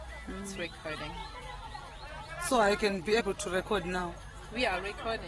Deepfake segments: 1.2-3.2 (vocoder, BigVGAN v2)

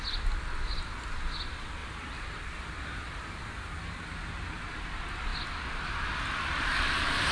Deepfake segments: none

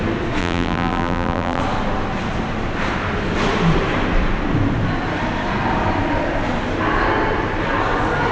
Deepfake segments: 0.4-1.6 (vocoder, BigVGAN v2)

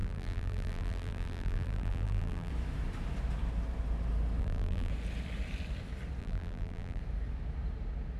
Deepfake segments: 0.0-2.5 (vocoder, BigVGAN v2); 4.4-4.9; 6.2-7.0

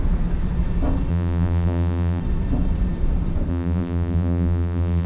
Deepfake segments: 1.1-2.2 (vocoder, BigVGAN v2); 3.5-5.1